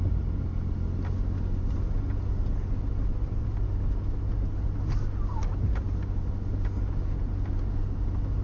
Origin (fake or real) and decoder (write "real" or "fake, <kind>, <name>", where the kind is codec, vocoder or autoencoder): real